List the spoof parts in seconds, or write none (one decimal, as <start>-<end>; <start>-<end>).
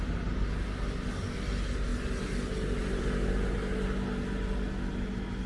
none